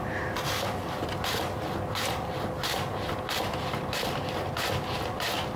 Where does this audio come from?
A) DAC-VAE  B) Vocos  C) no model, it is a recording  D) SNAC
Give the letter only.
C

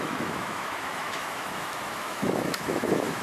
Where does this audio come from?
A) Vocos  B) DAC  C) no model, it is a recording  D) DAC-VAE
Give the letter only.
D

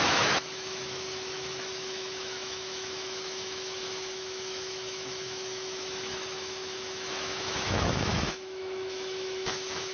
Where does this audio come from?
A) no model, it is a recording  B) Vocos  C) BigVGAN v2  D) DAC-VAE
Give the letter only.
D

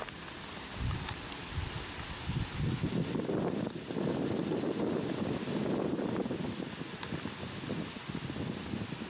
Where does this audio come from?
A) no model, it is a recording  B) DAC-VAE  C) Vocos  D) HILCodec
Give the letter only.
A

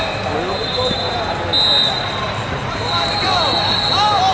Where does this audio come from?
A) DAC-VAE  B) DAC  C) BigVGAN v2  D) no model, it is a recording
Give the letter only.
D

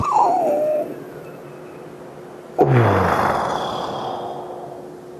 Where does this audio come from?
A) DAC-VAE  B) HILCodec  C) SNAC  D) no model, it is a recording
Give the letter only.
D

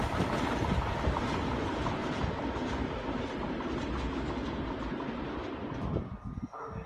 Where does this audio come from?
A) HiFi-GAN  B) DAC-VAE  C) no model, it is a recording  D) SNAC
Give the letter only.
C